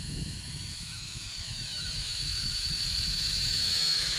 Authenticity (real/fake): fake